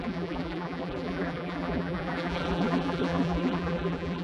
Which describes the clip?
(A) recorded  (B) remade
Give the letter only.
B